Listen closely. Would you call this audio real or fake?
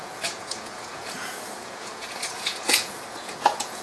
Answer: fake